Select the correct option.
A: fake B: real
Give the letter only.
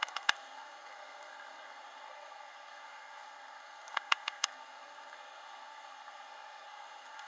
A